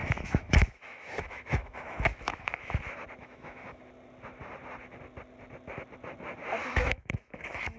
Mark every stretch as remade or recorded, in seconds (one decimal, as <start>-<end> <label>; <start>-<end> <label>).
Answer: 0.0-2.8 remade; 2.8-3.2 recorded; 3.2-3.8 remade; 3.8-6.6 recorded; 6.6-7.8 remade